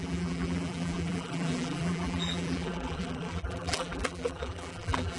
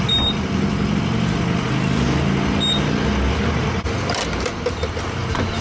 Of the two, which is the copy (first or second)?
first